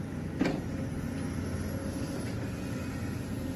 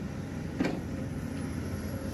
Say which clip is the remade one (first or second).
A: second